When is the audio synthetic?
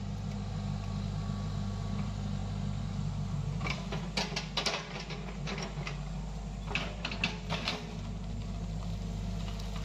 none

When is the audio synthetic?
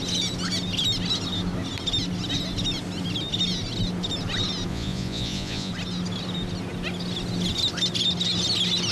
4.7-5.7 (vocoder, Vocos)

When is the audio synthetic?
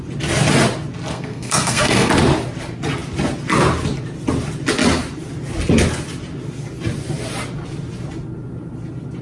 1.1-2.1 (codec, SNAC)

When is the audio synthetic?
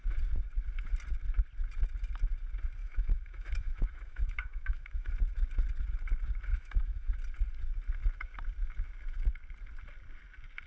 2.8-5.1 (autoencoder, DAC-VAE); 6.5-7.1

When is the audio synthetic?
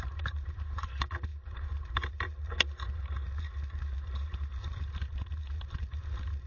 0.0-6.5 (vocoder, BigVGAN v2)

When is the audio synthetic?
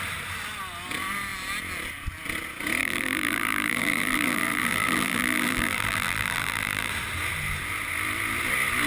2.8-6.9 (vocoder, BigVGAN v2)